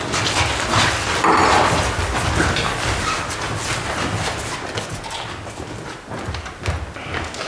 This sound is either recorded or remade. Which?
recorded